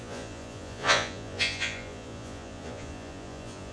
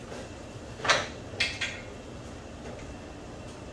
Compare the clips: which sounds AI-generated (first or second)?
first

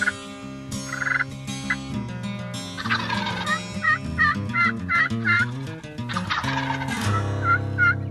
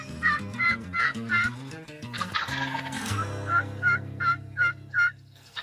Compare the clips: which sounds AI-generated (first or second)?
second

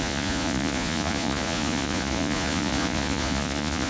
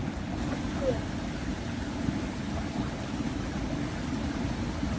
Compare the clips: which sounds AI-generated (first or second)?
first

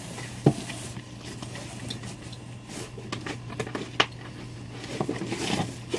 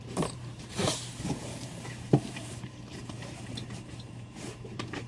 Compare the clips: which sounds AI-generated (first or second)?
second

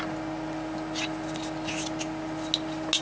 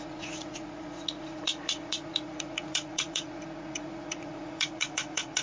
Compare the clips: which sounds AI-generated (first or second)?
second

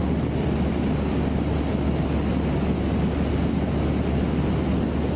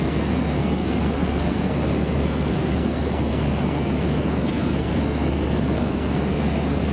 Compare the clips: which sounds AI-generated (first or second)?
second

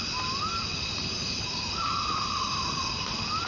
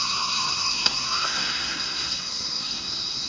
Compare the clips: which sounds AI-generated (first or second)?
second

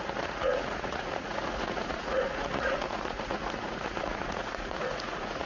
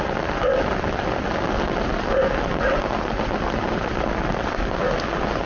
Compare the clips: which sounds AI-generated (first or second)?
first